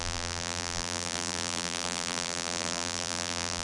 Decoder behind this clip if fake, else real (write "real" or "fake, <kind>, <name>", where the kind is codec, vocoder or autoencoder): fake, vocoder, BigVGAN v2